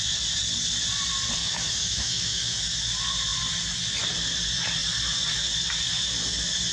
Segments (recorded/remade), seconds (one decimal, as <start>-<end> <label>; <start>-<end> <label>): 0.0-1.4 recorded; 1.4-2.6 remade; 2.6-6.7 recorded